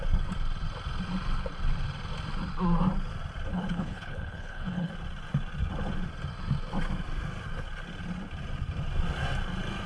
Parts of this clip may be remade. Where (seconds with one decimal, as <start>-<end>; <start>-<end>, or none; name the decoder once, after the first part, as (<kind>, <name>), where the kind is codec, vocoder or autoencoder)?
3.5-4.9 (codec, HILCodec)